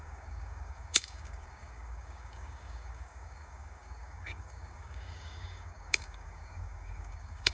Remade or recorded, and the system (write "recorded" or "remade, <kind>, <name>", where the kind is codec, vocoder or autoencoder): remade, codec, DAC